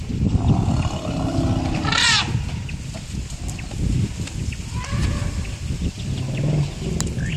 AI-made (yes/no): no